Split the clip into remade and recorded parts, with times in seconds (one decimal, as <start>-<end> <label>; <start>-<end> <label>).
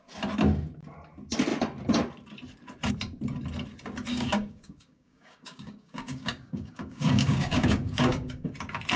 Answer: 0.0-4.1 recorded; 4.1-8.5 remade; 8.5-9.0 recorded